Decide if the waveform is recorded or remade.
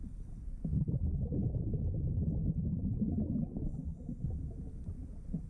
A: recorded